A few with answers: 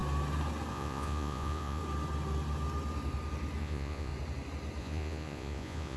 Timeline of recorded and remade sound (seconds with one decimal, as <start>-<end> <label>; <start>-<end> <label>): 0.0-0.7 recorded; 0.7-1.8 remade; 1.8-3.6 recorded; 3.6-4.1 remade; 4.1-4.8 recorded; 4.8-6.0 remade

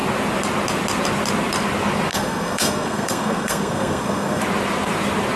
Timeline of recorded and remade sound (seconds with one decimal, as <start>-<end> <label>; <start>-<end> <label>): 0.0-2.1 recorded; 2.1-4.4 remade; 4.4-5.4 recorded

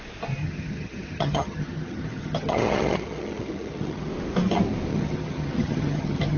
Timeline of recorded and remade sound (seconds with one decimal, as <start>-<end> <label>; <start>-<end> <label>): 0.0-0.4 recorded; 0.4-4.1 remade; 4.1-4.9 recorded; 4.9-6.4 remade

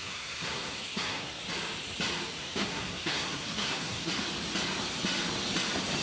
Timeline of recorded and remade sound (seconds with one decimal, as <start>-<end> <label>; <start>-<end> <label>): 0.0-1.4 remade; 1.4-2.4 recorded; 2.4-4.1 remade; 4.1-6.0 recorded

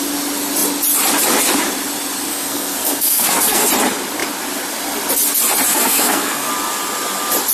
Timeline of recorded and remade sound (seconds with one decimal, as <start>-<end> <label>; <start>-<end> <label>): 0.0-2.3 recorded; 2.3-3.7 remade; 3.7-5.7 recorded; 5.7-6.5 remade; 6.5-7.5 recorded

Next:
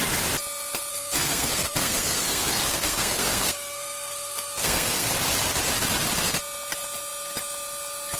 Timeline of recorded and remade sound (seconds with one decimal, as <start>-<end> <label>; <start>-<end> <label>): 0.0-0.9 recorded; 0.9-5.1 remade; 5.1-8.2 recorded

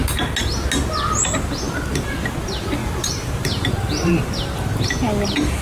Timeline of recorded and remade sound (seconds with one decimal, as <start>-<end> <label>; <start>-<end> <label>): 0.0-2.8 recorded; 2.8-4.3 remade; 4.3-5.6 recorded

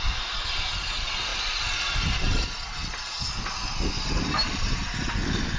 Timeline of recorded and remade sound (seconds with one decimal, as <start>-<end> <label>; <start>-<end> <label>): 0.0-5.6 recorded